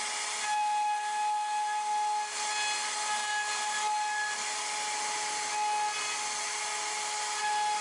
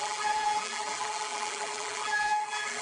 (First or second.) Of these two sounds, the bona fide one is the first